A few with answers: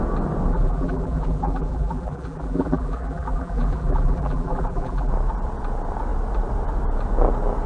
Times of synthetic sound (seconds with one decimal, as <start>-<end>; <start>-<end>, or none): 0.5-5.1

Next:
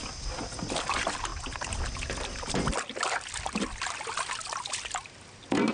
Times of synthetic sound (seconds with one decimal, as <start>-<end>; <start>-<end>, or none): none

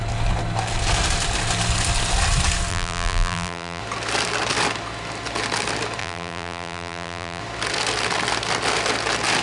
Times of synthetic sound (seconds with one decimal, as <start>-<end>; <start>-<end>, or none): 2.7-3.8; 6.0-7.4

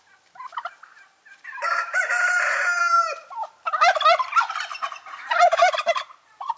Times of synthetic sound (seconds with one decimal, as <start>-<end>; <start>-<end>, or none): 1.3-2.8; 4.7-6.6